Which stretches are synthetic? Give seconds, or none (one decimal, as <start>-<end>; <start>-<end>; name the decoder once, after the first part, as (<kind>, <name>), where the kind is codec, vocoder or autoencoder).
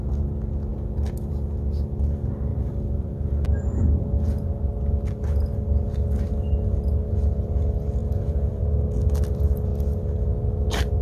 0.7-1.3 (vocoder, BigVGAN v2); 2.5-4.5; 8.0-8.6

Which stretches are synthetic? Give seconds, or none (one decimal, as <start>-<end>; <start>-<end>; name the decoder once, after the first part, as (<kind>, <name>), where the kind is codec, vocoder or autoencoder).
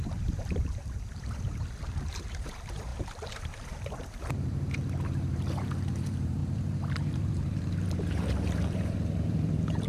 0.0-9.9 (vocoder, BigVGAN v2)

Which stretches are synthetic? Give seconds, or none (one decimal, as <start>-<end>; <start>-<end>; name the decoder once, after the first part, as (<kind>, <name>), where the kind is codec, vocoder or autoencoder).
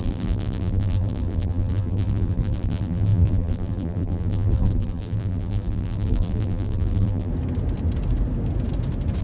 0.0-7.3 (vocoder, BigVGAN v2)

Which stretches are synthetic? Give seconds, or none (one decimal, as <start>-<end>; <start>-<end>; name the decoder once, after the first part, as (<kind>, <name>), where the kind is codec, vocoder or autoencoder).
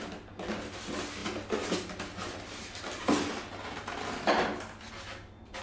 none